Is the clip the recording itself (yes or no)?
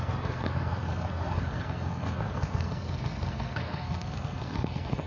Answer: no